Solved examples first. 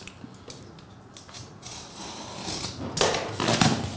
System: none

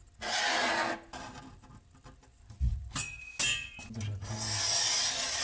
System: none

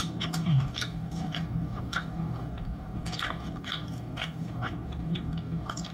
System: codec, DAC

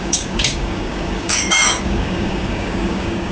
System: codec, DAC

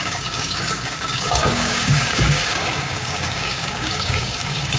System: codec, DAC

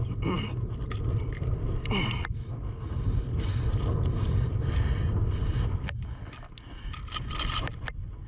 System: none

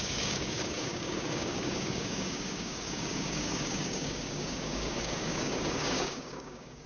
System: codec, DAC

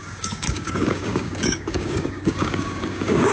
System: codec, DAC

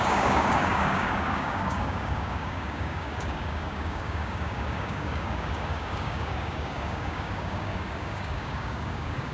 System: codec, DAC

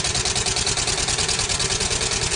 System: none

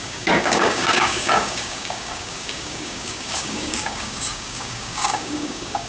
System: codec, DAC